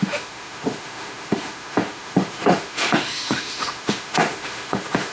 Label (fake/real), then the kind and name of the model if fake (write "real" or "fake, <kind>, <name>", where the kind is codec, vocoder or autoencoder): fake, autoencoder, DAC-VAE